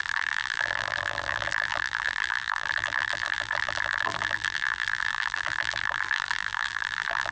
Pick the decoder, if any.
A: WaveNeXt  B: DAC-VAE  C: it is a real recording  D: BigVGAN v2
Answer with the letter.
D